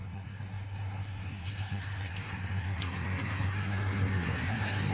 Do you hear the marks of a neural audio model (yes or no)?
yes